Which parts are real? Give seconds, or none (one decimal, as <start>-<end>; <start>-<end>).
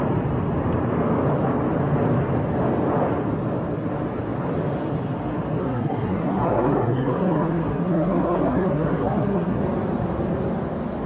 0.0-5.6; 9.6-11.1